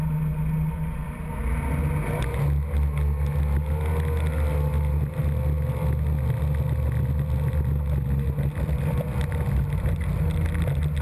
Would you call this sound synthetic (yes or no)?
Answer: no